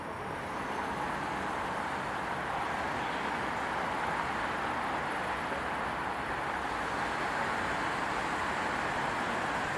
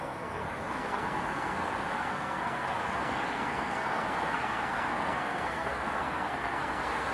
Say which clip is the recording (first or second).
first